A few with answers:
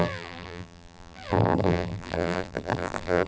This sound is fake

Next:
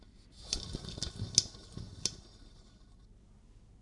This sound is real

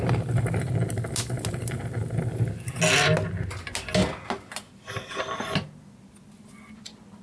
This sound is real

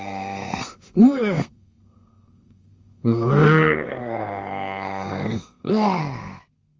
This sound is fake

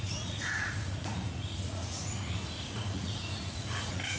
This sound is fake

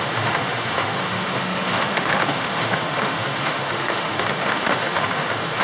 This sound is fake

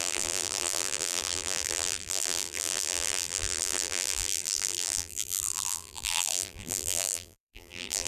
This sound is fake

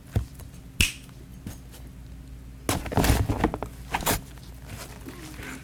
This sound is real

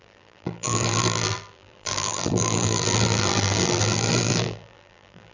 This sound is fake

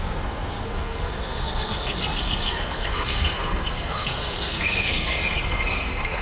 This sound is fake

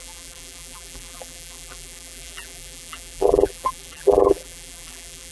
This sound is fake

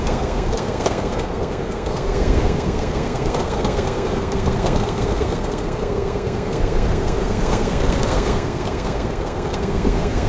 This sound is fake